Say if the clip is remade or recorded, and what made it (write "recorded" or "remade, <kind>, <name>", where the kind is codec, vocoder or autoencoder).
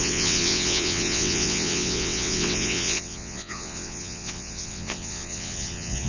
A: remade, vocoder, WaveNeXt